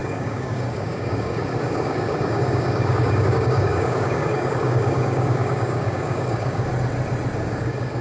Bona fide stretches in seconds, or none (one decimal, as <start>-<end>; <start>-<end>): 6.7-7.4